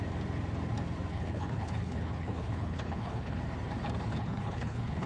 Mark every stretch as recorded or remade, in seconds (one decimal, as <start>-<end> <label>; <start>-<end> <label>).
0.0-1.1 recorded; 1.1-3.4 remade; 3.4-4.1 recorded; 4.1-5.1 remade